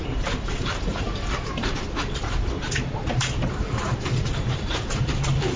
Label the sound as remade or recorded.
remade